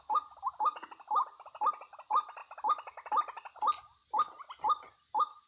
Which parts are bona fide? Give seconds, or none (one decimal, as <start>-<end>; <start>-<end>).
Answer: 0.0-5.5